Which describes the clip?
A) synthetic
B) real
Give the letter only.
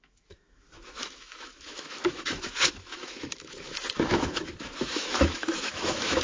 A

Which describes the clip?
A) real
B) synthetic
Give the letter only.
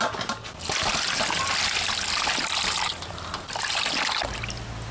A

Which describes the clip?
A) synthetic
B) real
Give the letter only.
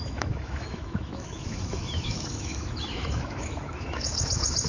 A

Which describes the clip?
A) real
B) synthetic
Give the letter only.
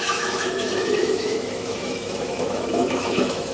B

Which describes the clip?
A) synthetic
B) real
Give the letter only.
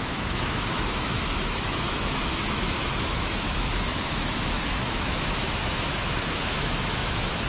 A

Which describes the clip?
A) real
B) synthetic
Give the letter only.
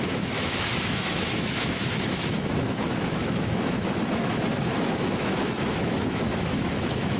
B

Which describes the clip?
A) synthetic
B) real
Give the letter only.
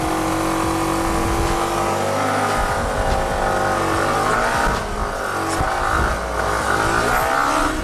B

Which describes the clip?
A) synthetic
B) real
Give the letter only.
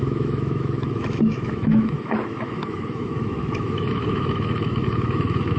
A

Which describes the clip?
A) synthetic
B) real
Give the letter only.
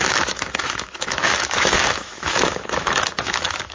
A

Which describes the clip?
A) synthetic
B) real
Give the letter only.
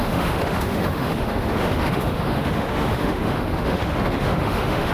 A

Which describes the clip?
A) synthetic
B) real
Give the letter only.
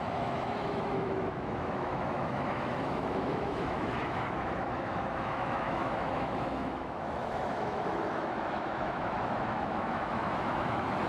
A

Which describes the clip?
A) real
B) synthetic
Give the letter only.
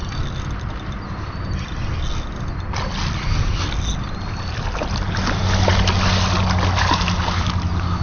A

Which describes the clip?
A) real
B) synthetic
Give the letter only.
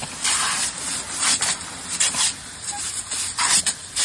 A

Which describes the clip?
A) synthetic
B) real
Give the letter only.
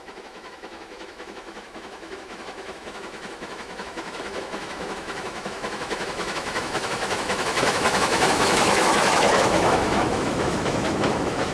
A